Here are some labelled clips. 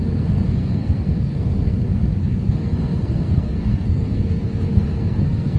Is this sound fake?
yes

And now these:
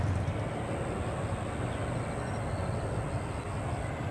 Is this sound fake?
no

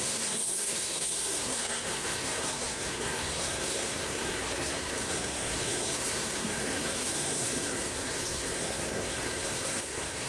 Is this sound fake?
yes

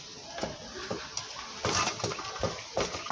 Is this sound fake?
no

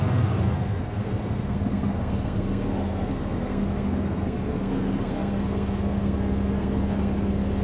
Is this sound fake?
yes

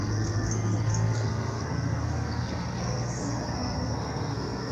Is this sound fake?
yes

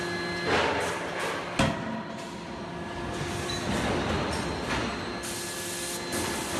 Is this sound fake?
no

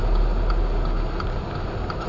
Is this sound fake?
no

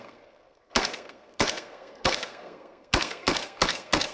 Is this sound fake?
yes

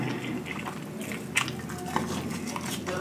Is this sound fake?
no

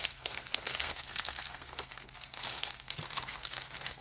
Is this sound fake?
yes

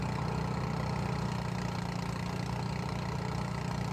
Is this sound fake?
no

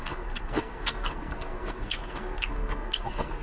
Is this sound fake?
yes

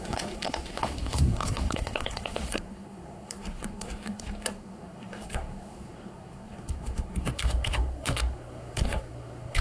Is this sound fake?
yes